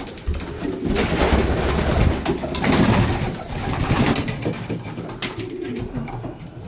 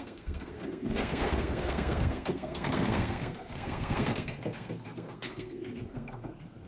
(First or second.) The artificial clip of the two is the second